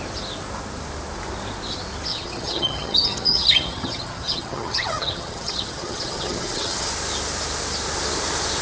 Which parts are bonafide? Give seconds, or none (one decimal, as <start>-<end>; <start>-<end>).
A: 0.0-2.1; 6.9-8.6